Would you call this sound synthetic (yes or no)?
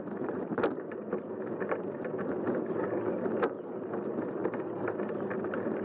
no